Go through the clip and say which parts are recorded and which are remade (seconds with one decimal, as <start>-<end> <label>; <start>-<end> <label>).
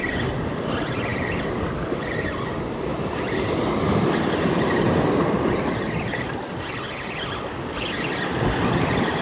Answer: 0.0-9.2 recorded